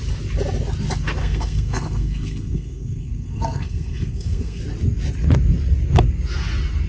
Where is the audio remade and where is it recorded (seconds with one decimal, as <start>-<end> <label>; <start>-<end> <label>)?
0.0-1.2 recorded; 1.2-4.6 remade; 4.6-6.9 recorded